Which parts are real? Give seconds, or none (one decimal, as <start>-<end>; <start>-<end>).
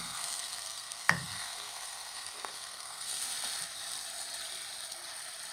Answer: 3.2-5.5